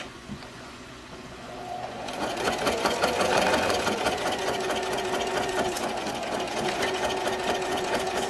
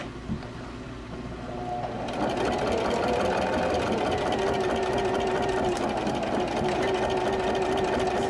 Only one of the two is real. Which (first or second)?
second